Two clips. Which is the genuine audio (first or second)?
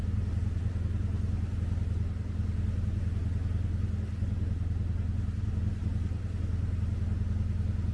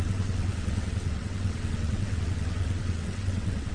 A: first